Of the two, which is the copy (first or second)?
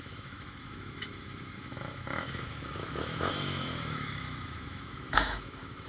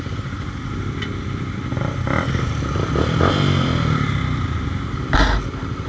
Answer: first